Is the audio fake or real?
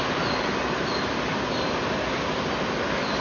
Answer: real